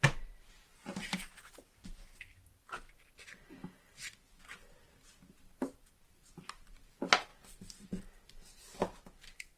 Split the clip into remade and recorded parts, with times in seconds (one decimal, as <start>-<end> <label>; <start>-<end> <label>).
0.0-9.6 recorded